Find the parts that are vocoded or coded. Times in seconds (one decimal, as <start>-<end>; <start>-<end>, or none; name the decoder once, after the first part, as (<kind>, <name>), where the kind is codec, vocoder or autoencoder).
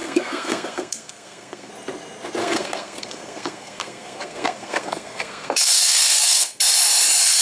0.0-1.7 (codec, SNAC); 2.4-6.6